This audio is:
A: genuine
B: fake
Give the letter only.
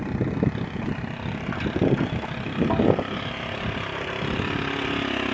A